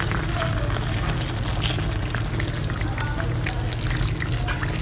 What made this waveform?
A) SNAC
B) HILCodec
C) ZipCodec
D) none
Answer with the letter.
D